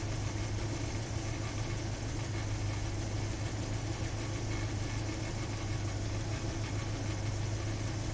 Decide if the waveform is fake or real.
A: real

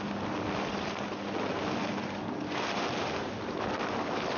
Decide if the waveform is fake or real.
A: real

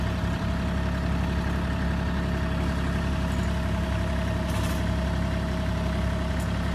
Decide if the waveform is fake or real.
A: real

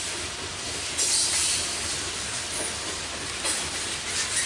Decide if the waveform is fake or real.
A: real